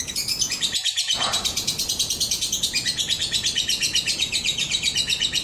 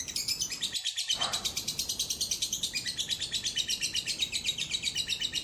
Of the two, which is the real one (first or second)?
second